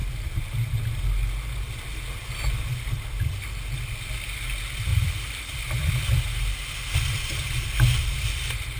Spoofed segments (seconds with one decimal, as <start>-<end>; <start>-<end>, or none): 4.9-5.9